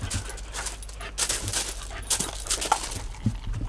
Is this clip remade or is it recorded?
recorded